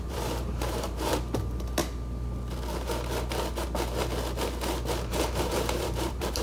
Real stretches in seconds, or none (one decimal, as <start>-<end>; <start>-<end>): 1.8-5.1